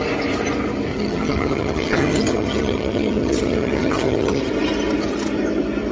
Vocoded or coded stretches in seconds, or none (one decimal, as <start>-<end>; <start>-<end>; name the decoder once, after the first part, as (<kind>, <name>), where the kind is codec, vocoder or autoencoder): 0.9-4.4 (vocoder, HiFi-GAN)